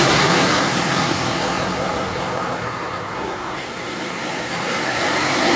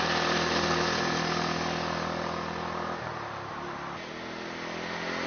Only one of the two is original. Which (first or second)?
second